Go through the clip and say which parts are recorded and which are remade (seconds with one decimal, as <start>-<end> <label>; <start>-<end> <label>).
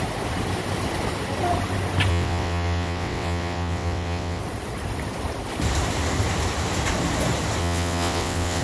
0.0-2.1 recorded; 2.1-4.4 remade; 4.4-7.6 recorded; 7.6-8.6 remade